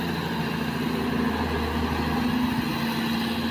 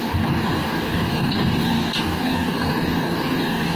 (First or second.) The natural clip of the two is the first